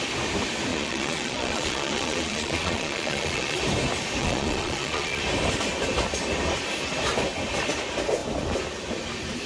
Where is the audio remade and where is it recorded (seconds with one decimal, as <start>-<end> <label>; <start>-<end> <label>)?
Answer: 0.0-0.7 recorded; 0.7-3.6 remade; 3.6-4.2 recorded; 4.2-5.2 remade; 5.2-9.5 recorded